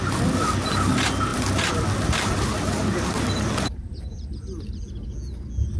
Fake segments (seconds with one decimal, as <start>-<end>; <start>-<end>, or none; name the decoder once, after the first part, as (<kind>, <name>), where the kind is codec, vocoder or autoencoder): 1.3-4.8 (vocoder, BigVGAN v2)